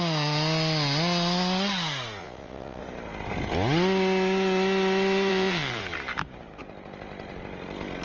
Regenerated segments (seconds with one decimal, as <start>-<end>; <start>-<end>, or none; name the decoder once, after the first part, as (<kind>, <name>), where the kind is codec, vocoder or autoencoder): 2.2-2.8 (vocoder, Vocos); 5.3-5.8